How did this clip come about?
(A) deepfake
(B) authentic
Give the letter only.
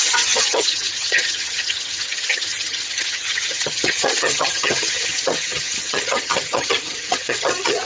A